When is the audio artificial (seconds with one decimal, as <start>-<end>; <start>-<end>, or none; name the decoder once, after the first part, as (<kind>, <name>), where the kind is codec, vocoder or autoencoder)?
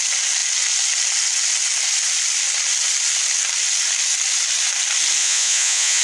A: 5.2-6.0 (vocoder, Vocos)